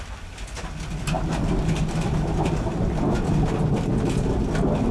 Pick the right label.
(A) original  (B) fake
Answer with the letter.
A